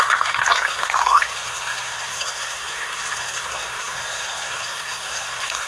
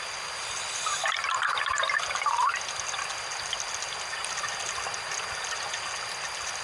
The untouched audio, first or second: second